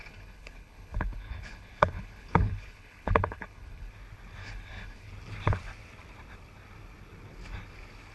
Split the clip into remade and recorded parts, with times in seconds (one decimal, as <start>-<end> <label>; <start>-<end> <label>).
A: 0.0-3.9 remade; 3.9-4.4 recorded; 4.4-5.1 remade; 5.1-8.1 recorded